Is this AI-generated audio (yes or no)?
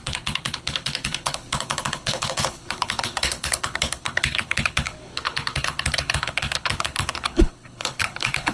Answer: yes